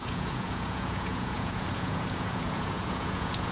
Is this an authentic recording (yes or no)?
no